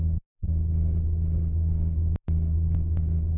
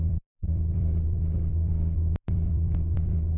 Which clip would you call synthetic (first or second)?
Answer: second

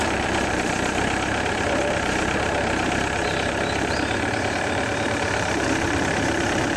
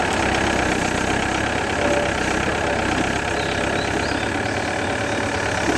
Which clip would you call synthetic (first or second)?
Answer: first